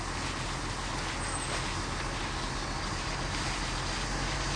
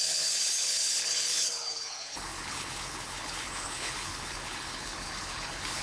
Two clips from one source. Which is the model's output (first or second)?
second